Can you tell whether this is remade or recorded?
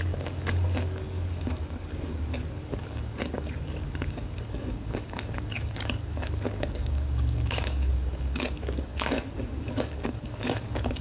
remade